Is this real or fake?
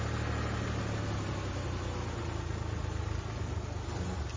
real